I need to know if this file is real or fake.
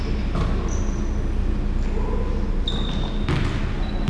real